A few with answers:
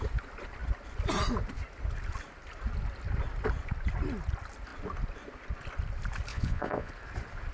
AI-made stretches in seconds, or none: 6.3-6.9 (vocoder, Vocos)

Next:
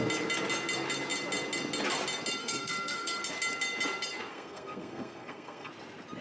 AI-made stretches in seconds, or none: 2.4-3.2 (codec, SNAC); 4.3-5.7

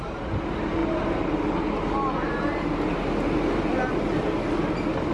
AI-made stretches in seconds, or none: none

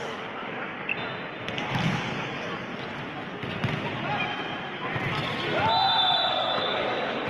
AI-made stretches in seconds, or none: 0.0-0.9 (codec, DAC); 1.9-2.7; 6.3-7.3

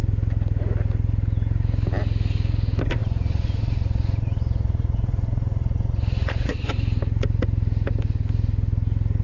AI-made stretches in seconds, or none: 3.0-6.6 (vocoder, Vocos)

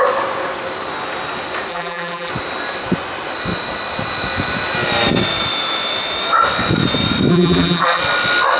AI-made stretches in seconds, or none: 1.7-2.3 (vocoder, BigVGAN v2); 7.3-8.0

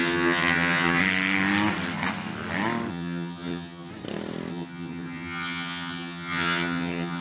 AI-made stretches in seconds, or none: 0.0-1.0 (vocoder, HiFi-GAN); 2.9-3.9; 4.5-7.2